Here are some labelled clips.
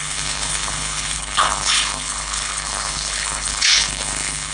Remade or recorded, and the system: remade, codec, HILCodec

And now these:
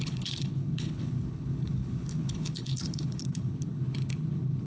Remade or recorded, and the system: remade, codec, HILCodec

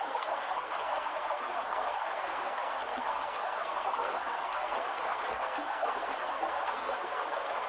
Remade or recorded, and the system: remade, codec, SNAC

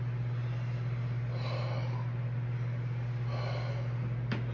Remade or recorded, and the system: recorded